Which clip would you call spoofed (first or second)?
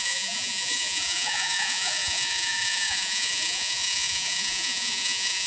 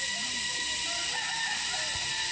first